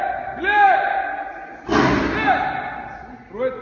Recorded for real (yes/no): yes